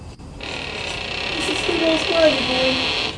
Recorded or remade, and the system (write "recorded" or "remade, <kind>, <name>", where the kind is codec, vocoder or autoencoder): recorded